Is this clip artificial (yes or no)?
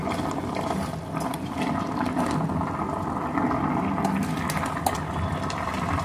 no